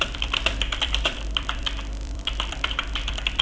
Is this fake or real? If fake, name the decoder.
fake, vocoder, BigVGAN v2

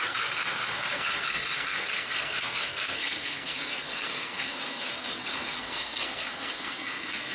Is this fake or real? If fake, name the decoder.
fake, codec, SNAC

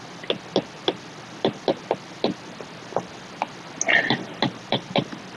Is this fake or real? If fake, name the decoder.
real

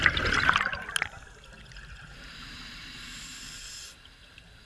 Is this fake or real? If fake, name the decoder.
real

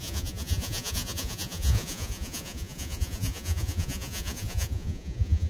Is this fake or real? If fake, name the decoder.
fake, vocoder, Vocos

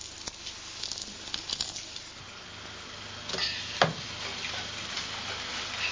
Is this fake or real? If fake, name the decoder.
real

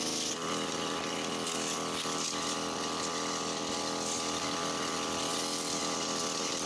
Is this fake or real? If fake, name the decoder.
real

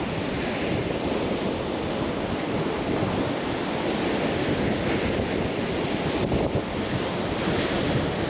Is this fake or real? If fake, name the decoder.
real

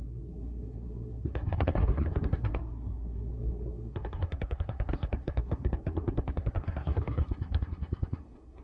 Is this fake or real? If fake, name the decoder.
fake, codec, SNAC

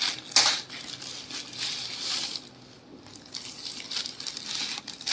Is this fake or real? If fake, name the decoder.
real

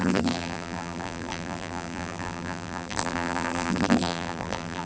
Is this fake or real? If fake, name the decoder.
fake, vocoder, BigVGAN v2